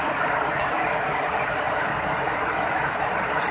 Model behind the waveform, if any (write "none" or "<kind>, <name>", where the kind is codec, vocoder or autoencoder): none